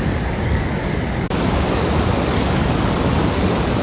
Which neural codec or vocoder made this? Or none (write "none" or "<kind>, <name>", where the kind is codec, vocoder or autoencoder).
codec, DAC